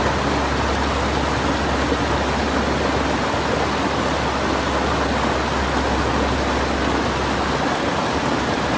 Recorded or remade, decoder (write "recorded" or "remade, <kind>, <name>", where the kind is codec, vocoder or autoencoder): recorded